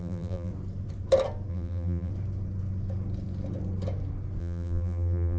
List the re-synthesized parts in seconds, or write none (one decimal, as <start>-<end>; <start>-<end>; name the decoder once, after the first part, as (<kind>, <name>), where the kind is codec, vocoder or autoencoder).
0.0-0.5 (vocoder, BigVGAN v2); 1.5-2.1; 4.4-5.4